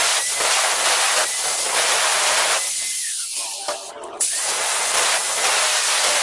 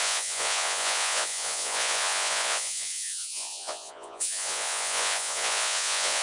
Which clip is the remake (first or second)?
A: second